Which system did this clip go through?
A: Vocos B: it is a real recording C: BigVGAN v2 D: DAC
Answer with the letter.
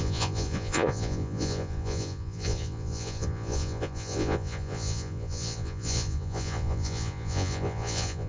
A